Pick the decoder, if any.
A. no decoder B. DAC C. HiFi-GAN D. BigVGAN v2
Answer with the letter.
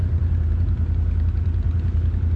A